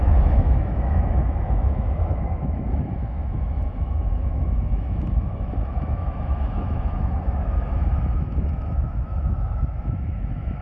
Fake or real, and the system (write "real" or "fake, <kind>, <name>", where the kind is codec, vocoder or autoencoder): fake, autoencoder, DAC-VAE